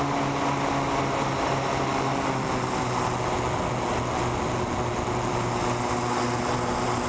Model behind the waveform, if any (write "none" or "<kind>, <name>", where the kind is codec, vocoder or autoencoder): none